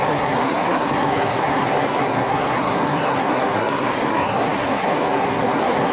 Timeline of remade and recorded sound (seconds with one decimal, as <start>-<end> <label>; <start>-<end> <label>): 0.0-5.9 remade